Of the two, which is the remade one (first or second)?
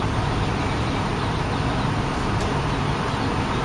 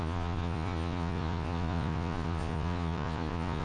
second